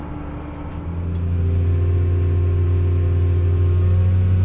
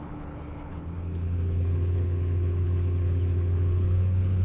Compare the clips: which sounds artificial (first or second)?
second